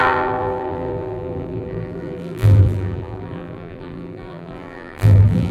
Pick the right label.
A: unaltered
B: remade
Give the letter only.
B